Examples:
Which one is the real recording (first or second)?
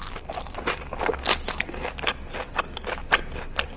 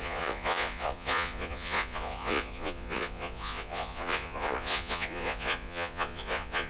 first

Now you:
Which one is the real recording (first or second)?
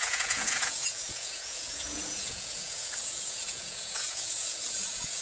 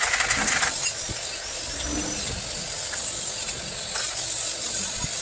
second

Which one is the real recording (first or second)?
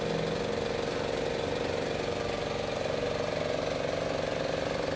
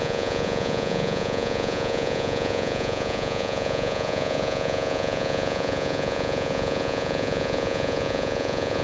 first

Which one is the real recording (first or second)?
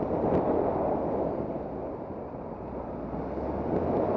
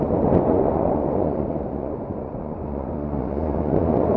first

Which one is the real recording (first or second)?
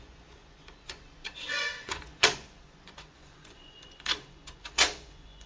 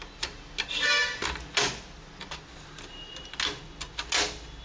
second